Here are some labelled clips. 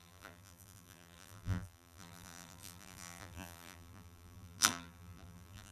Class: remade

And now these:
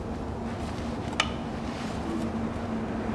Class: recorded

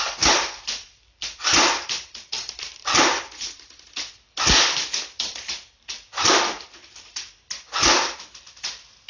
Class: recorded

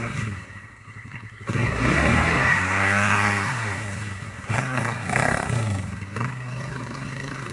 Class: remade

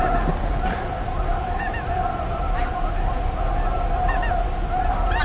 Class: recorded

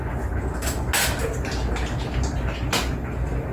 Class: recorded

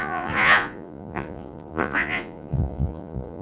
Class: remade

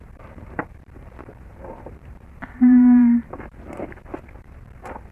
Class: remade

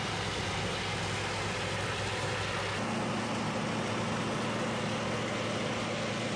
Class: recorded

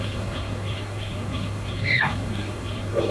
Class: remade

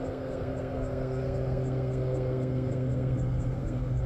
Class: remade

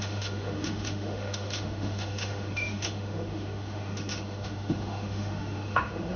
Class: remade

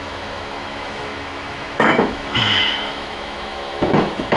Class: remade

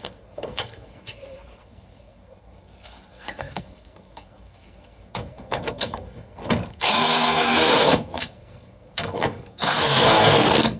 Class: remade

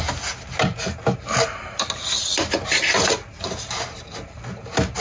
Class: recorded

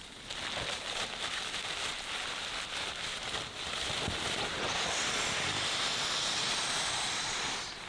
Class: recorded